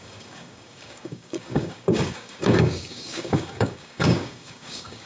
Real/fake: fake